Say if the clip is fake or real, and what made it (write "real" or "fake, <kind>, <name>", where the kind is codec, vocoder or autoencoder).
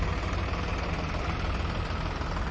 real